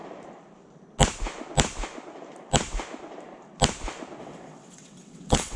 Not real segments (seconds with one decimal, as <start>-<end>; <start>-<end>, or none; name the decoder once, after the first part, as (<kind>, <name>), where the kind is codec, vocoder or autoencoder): 4.2-5.6 (vocoder, WaveNeXt)